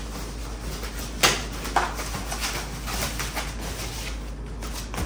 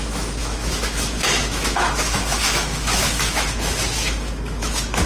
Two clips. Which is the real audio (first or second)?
first